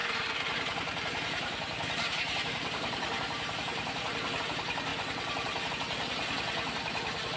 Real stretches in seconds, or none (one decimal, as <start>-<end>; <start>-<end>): 4.4-4.9; 5.7-7.4